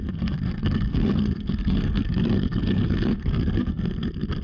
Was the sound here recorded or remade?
remade